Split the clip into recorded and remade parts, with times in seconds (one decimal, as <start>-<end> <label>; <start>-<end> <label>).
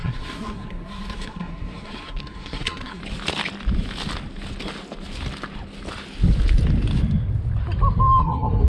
0.0-3.0 remade; 3.0-8.2 recorded; 8.2-8.7 remade